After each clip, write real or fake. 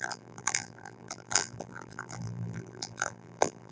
fake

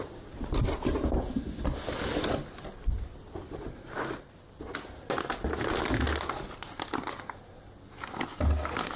real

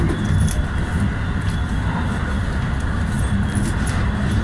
real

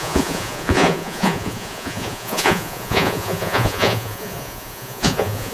fake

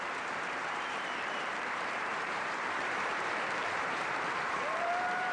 fake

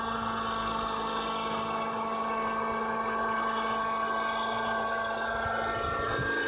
real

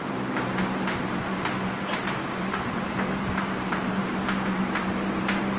fake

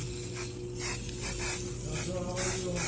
real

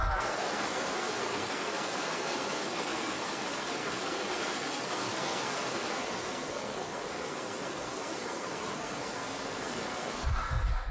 fake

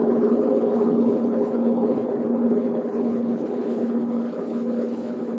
fake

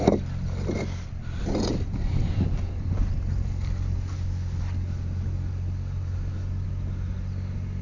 real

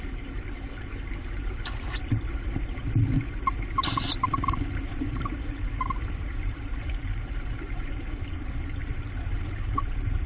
fake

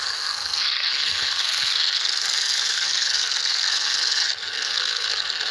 fake